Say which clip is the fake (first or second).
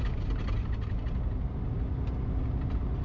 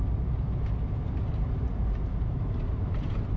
second